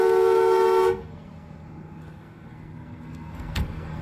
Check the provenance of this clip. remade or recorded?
remade